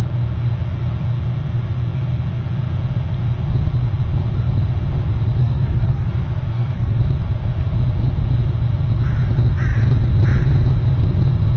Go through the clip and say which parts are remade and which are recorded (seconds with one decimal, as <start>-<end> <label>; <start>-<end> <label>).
0.0-5.4 recorded; 5.4-6.1 remade; 6.1-6.5 recorded; 6.5-7.0 remade; 7.0-11.6 recorded